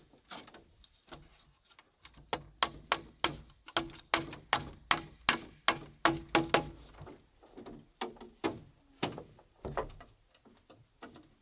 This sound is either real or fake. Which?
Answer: real